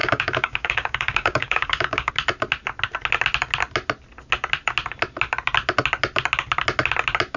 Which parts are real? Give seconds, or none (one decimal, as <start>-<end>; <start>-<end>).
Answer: 2.1-7.4